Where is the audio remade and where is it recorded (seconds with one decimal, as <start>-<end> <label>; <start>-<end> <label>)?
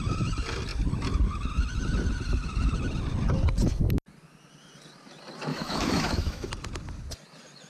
0.0-5.5 recorded; 5.5-6.5 remade; 6.5-7.7 recorded